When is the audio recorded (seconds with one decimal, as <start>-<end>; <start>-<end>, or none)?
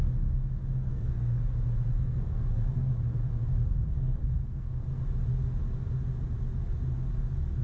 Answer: 0.0-0.9; 1.4-1.9; 2.9-3.7; 5.0-7.6